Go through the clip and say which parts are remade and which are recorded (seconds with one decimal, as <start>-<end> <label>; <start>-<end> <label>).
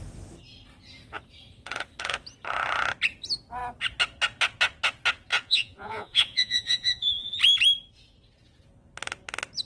0.0-5.3 recorded; 5.3-7.4 remade; 7.4-9.7 recorded